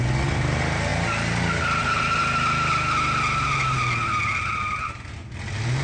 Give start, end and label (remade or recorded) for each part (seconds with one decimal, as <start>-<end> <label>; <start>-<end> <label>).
0.0-5.8 recorded